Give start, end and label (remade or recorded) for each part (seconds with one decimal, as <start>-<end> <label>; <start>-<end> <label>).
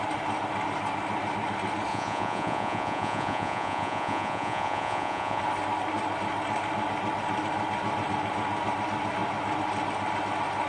0.0-1.9 recorded; 1.9-5.4 remade; 5.4-10.7 recorded